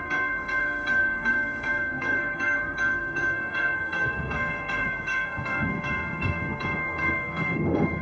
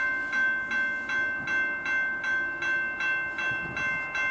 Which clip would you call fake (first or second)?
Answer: first